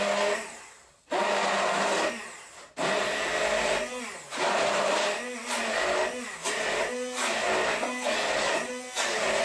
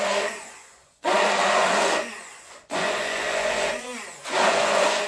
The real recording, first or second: first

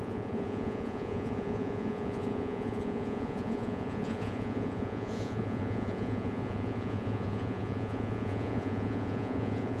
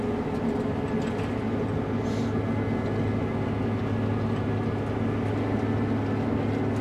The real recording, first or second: second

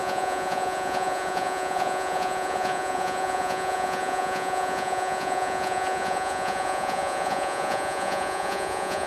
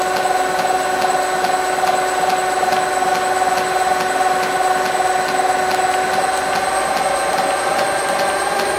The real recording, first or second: second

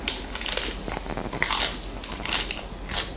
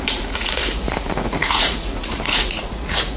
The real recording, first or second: first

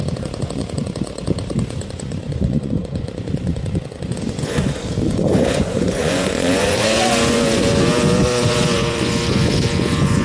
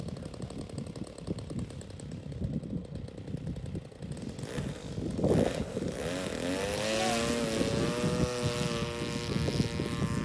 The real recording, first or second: second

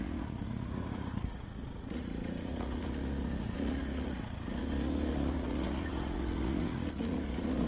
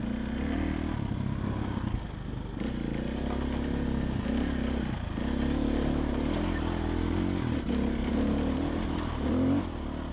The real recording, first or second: second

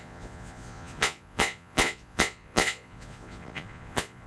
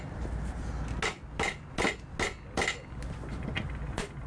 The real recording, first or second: second